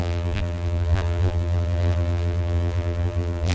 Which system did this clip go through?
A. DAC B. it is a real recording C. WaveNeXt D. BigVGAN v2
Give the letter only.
D